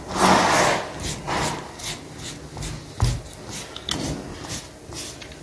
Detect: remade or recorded recorded